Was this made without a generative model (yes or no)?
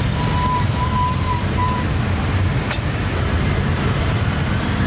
yes